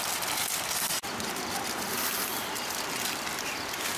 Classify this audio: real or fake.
real